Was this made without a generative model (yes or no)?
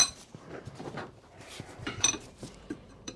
no